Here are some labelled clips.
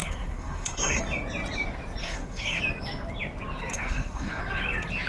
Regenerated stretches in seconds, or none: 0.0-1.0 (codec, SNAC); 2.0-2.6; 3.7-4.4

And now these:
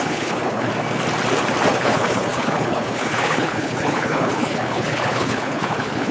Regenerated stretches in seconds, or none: 0.0-0.7 (codec, HILCodec); 1.7-6.1